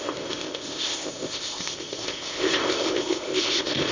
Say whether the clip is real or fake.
fake